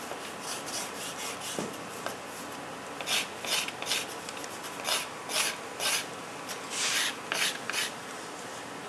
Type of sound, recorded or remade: recorded